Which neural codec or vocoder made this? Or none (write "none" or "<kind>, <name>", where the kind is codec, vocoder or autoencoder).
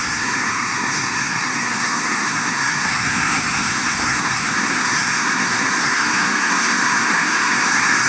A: codec, SNAC